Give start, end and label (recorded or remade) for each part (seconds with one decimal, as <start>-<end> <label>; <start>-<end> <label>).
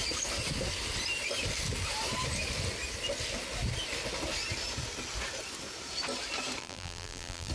0.0-6.6 recorded; 6.6-7.5 remade